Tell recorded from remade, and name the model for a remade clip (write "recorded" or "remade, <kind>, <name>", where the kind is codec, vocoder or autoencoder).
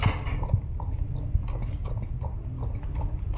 recorded